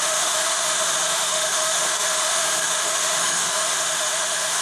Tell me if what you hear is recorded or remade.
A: remade